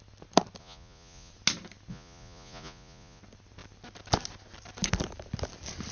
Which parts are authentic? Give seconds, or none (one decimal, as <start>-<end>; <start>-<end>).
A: 0.0-0.6; 1.3-1.9; 3.2-5.9